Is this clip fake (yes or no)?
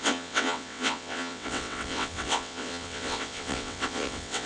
yes